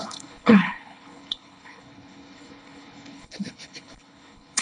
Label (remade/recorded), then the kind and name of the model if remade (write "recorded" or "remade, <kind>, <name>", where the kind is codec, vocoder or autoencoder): remade, codec, HILCodec